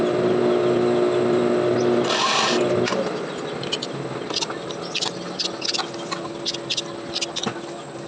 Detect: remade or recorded recorded